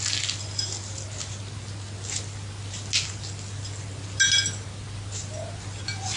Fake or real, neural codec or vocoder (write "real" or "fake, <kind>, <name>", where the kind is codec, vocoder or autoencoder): real